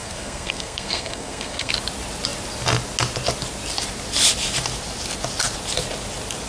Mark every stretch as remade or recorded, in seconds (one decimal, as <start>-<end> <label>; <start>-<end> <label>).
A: 0.0-1.7 remade; 1.7-6.5 recorded